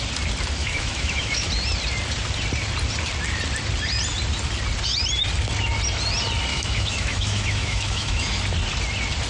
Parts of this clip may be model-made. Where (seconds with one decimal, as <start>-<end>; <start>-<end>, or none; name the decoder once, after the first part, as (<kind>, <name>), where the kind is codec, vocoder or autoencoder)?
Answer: 0.6-1.5 (autoencoder, DAC-VAE); 6.5-8.4